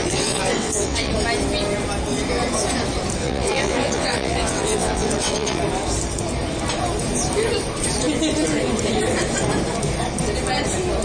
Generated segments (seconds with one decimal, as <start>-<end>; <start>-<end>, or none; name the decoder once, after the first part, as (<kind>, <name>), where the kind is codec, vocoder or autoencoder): 0.0-1.1 (vocoder, WaveNeXt); 3.2-5.6